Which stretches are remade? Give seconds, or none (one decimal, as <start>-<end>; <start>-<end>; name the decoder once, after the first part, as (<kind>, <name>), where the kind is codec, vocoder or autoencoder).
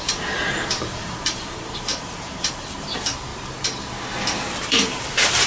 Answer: 0.0-3.3 (vocoder, BigVGAN v2); 4.6-5.5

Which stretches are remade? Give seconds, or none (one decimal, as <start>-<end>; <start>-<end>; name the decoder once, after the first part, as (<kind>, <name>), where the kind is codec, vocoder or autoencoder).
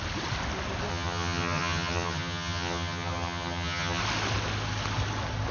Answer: 0.9-4.0 (vocoder, HiFi-GAN)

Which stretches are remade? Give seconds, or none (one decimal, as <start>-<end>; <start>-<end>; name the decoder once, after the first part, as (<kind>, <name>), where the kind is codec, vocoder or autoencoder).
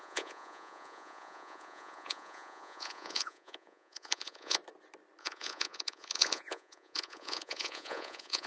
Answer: 0.0-4.6 (vocoder, Vocos); 5.2-8.5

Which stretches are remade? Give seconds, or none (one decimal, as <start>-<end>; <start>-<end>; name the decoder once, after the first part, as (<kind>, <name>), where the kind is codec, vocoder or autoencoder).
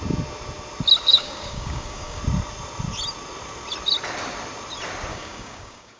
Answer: 1.1-2.2 (codec, DAC); 5.1-6.0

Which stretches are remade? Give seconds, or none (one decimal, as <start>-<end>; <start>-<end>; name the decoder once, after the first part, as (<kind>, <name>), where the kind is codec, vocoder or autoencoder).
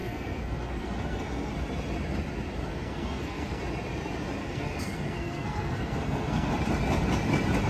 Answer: 0.0-1.5 (codec, SNAC); 2.7-3.6; 4.4-6.5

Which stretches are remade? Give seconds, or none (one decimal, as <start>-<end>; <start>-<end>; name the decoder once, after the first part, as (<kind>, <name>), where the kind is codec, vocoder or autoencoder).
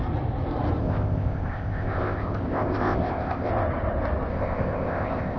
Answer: 0.8-3.5 (codec, ZipCodec); 4.3-5.4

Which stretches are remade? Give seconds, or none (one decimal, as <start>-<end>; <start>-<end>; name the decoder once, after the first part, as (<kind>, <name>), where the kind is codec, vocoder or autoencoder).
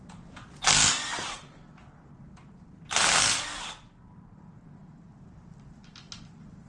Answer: none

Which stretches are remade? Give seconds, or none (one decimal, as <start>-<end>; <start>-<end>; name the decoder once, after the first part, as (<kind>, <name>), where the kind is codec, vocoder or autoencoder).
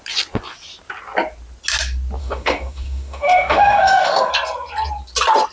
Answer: 2.2-4.3 (autoencoder, DAC-VAE)